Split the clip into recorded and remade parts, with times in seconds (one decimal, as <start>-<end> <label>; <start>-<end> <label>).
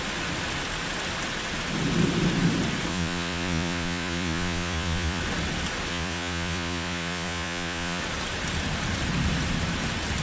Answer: 0.0-2.9 recorded; 2.9-5.2 remade; 5.2-5.9 recorded; 5.9-8.0 remade; 8.0-10.2 recorded